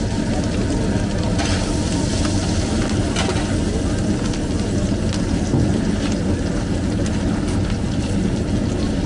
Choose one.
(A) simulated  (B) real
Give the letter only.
B